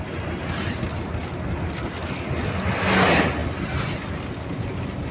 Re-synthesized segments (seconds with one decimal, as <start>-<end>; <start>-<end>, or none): 1.2-1.9; 3.4-5.1